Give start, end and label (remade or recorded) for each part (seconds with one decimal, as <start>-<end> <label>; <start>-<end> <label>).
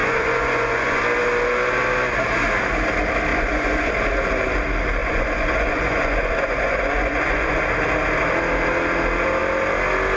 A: 0.0-1.0 remade; 1.0-3.3 recorded; 3.3-3.9 remade; 3.9-5.0 recorded; 5.0-7.6 remade; 7.6-10.2 recorded